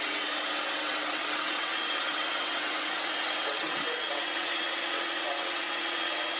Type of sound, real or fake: fake